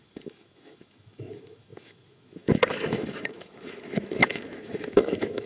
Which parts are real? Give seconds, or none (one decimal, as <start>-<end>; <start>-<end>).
none